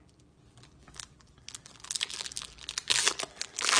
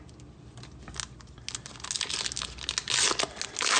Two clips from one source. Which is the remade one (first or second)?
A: first